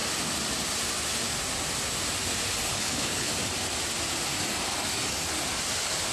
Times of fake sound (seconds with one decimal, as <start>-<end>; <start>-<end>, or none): 2.7-3.3